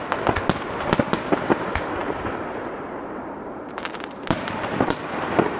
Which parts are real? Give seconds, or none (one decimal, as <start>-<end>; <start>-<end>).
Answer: 0.0-2.0